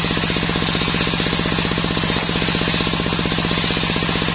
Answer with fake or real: real